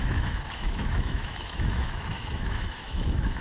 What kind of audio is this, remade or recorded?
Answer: remade